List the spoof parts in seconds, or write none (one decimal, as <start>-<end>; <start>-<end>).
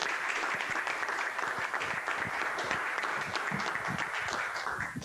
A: 0.0-3.0